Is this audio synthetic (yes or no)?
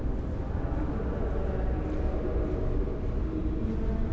no